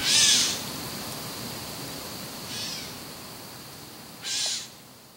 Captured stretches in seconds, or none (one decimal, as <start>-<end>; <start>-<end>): 2.8-5.2